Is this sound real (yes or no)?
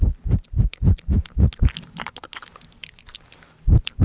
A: yes